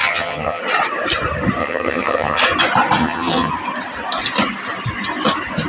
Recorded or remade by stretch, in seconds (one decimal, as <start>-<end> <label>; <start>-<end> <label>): 0.0-0.6 remade; 0.6-1.6 recorded; 1.6-2.4 remade; 2.4-3.0 recorded; 3.0-3.5 remade; 3.5-5.7 recorded